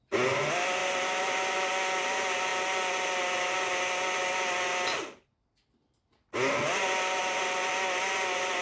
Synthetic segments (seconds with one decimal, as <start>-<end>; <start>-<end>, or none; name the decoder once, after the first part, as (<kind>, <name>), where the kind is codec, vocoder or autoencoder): 0.8-1.7 (vocoder, BigVGAN v2); 7.2-7.7